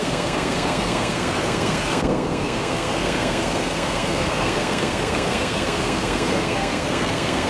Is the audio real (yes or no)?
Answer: no